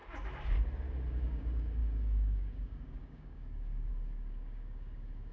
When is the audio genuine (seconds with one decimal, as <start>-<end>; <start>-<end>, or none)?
0.0-1.1